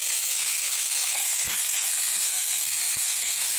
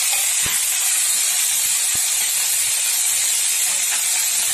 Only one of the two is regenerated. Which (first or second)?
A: first